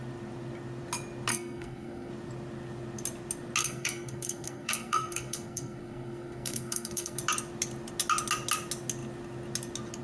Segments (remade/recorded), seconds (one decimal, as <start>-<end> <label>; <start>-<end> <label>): 0.0-1.3 recorded; 1.3-2.1 remade; 2.1-3.6 recorded; 3.6-7.2 remade; 7.2-10.0 recorded